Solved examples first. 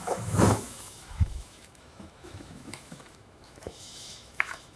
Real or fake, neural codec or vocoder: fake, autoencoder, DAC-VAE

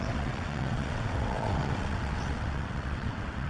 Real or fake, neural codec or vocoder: fake, vocoder, WaveNeXt